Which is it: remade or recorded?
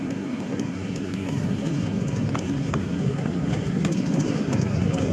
remade